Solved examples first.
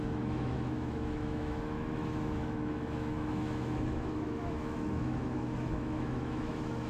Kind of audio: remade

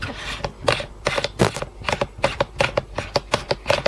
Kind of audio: recorded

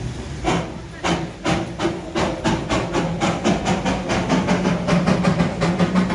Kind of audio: recorded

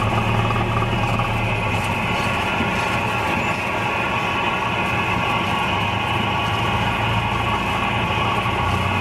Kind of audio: recorded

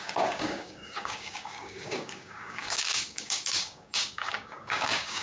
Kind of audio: remade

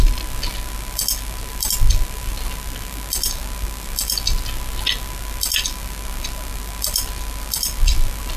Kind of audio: recorded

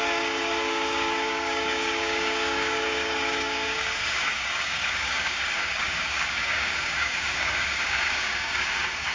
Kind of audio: remade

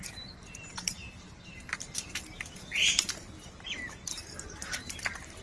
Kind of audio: remade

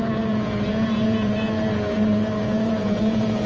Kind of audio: remade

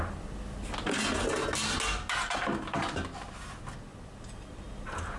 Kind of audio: recorded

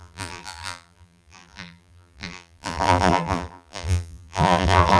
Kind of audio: remade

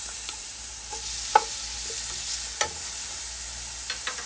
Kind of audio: recorded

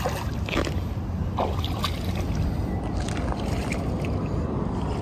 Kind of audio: recorded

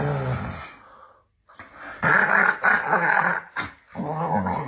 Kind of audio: recorded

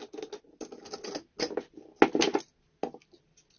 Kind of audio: recorded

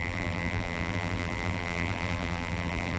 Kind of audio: remade